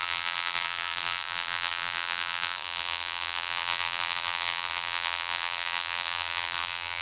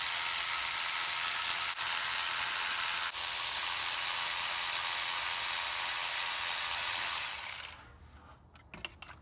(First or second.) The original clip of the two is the second